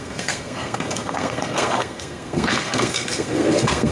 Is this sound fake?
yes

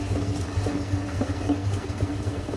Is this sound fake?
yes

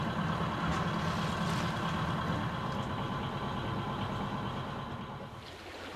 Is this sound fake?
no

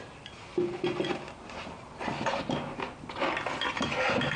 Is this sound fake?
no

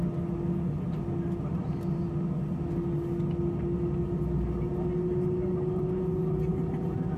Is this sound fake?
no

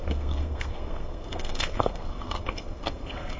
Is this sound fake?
yes